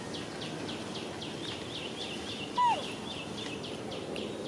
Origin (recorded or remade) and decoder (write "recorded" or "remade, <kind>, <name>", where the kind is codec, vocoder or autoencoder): recorded